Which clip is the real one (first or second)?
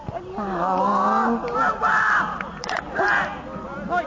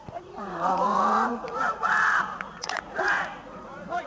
first